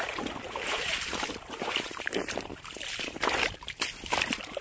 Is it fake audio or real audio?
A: fake